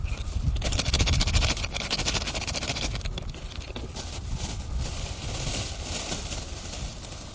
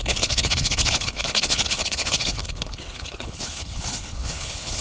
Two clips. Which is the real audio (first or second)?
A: first